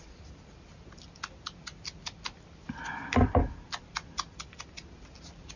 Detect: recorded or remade recorded